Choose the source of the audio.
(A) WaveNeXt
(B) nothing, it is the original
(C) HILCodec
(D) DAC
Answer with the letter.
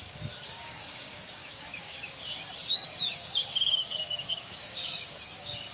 D